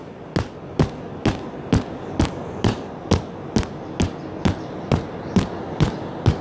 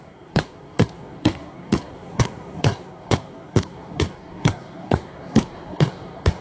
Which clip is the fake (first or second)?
second